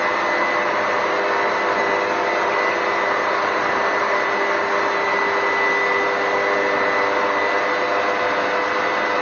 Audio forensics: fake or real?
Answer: real